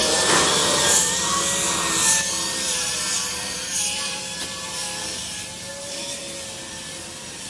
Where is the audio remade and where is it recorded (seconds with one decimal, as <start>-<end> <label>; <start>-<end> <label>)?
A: 0.0-4.8 remade; 4.8-5.7 recorded; 5.7-6.2 remade; 6.2-6.7 recorded; 6.7-7.5 remade

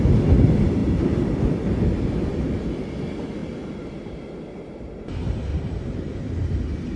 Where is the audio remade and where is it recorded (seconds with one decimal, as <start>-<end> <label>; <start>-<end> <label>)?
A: 0.0-5.5 recorded; 5.5-6.2 remade; 6.2-7.0 recorded

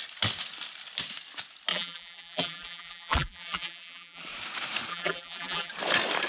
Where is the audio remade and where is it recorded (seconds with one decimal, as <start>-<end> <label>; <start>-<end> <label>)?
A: 0.0-1.7 recorded; 1.7-4.2 remade; 4.2-4.9 recorded; 4.9-5.7 remade; 5.7-6.3 recorded

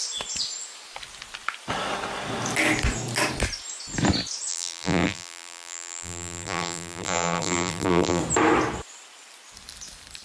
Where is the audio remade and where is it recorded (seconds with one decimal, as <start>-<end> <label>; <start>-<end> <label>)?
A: 0.0-4.5 recorded; 4.5-8.2 remade; 8.2-10.2 recorded